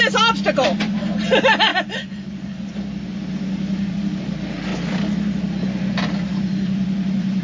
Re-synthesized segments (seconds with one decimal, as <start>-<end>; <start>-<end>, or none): none